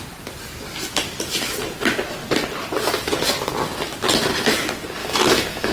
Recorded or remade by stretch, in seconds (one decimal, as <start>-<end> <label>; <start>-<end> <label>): 0.0-5.0 recorded; 5.0-5.7 remade